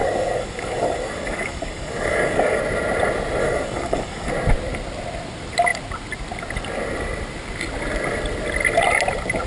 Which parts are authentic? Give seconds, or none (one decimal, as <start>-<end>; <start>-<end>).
2.6-3.4; 4.3-9.5